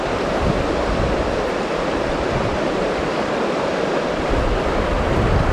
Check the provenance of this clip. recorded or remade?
recorded